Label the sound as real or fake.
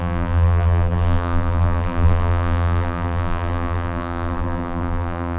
fake